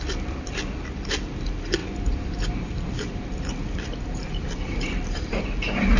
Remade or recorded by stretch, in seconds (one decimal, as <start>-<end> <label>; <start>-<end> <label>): 0.0-1.8 recorded; 1.8-5.4 remade; 5.4-6.0 recorded